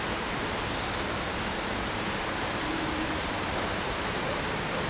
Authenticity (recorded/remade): remade